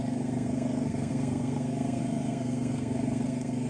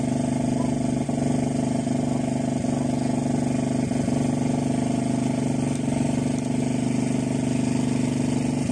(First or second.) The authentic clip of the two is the second